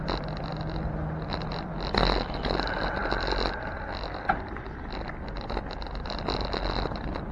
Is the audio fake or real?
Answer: real